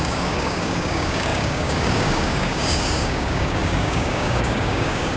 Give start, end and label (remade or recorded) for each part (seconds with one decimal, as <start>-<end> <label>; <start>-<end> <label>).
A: 0.0-5.2 remade